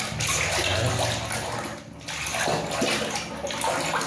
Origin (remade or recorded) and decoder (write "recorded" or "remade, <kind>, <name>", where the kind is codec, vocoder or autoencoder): recorded